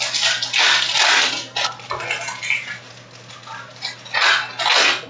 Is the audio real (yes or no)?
yes